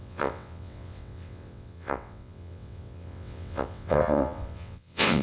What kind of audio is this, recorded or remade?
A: remade